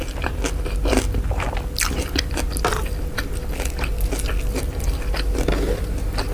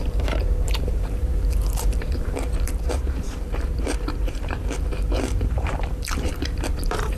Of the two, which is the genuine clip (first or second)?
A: first